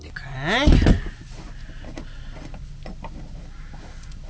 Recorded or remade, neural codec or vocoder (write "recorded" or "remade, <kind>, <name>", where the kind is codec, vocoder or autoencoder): recorded